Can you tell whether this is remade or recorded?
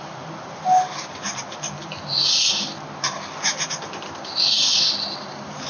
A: recorded